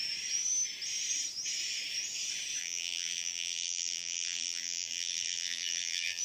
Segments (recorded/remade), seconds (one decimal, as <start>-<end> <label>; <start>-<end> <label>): 0.0-2.6 recorded; 2.6-6.2 remade